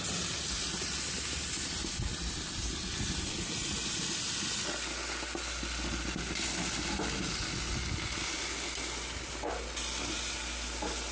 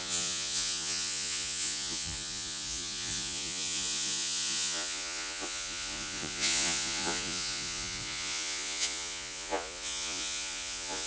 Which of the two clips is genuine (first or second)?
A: first